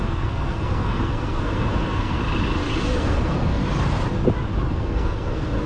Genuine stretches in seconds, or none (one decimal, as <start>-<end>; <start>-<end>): 2.2-2.8; 3.6-4.7